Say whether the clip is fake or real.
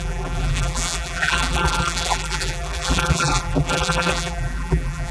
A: fake